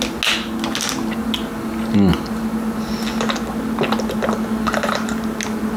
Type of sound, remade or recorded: recorded